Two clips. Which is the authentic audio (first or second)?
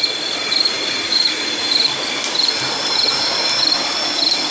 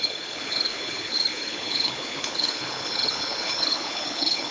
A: first